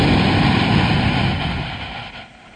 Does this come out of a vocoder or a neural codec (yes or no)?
no